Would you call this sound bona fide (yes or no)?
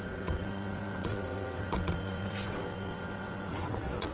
no